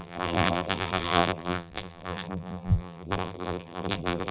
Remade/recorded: remade